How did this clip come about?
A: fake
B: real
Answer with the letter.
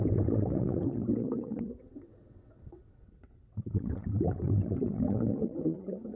A